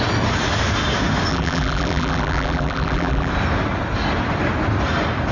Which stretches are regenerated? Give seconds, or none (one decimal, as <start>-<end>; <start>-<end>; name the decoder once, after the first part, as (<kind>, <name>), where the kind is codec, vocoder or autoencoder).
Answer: 1.3-3.3 (vocoder, BigVGAN v2)